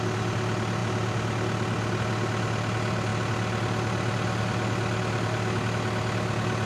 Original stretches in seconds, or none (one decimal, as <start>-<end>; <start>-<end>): 0.0-6.7